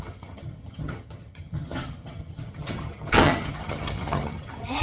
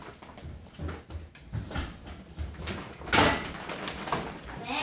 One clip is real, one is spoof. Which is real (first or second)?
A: second